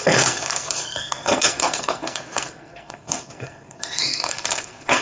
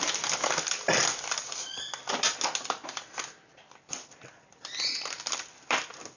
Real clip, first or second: second